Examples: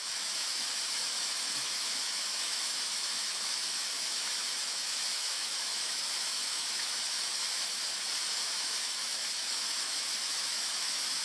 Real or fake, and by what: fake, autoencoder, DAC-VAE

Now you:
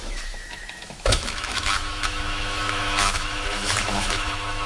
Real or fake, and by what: fake, autoencoder, DAC-VAE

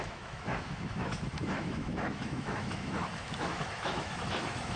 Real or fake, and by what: fake, autoencoder, DAC-VAE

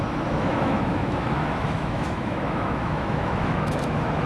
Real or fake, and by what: fake, autoencoder, DAC-VAE